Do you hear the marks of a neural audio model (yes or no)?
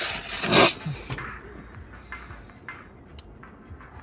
no